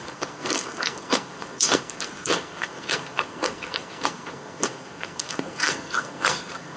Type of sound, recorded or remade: remade